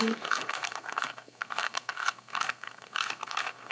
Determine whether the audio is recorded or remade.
remade